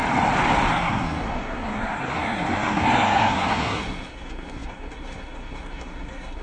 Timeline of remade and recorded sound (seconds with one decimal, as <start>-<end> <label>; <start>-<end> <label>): 0.0-0.7 recorded; 0.7-6.4 remade